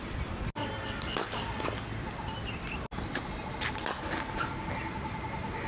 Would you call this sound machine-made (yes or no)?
no